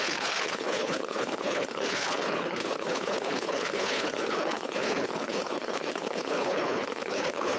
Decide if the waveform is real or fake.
fake